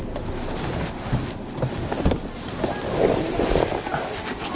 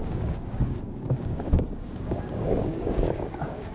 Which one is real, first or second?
first